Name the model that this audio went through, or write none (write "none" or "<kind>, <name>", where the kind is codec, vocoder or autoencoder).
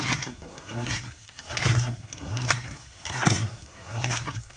codec, SNAC